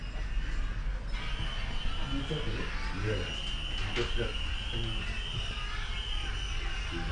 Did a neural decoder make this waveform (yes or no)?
no